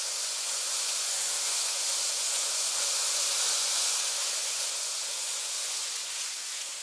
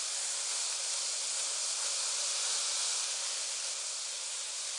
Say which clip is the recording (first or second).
second